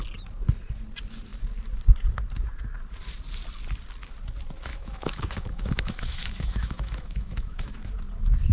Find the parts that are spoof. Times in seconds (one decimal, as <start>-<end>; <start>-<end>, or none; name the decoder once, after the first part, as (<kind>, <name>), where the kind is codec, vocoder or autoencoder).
4.7-7.9 (autoencoder, DAC-VAE)